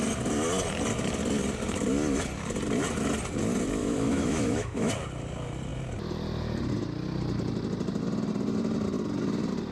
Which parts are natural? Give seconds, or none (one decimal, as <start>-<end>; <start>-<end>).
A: 0.0-3.8; 4.9-9.7